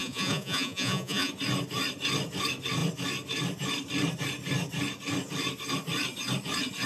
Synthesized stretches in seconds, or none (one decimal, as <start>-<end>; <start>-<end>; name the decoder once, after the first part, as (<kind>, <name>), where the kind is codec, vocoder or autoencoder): 0.0-1.3 (vocoder, Vocos)

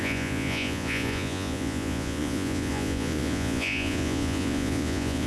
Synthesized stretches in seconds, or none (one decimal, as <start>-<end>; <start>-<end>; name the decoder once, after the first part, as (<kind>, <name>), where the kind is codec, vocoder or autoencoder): 0.0-5.3 (vocoder, Vocos)

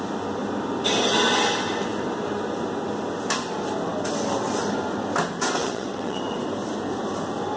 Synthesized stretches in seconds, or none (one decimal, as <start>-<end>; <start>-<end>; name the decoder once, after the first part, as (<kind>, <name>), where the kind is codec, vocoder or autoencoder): 5.6-6.2 (vocoder, WaveNeXt)

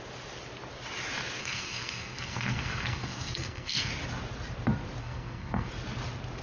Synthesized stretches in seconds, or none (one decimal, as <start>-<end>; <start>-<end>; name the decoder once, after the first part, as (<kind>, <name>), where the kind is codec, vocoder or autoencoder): 1.4-3.9 (codec, SNAC); 5.0-5.7